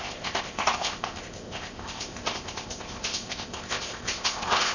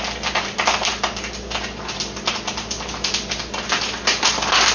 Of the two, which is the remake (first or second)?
first